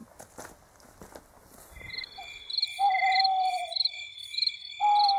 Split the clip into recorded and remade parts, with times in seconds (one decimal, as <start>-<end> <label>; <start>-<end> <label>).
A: 0.0-3.7 recorded; 3.7-4.8 remade; 4.8-5.2 recorded